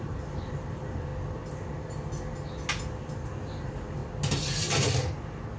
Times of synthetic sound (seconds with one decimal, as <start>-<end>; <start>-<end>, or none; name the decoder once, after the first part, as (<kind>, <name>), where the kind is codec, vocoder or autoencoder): 0.0-1.1 (vocoder, BigVGAN v2); 3.6-4.0